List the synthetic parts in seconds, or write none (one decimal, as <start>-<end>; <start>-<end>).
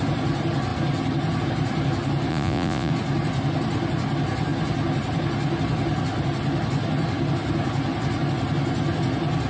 2.3-2.9